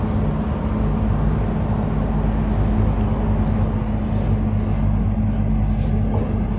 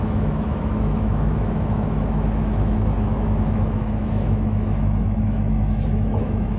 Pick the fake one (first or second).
second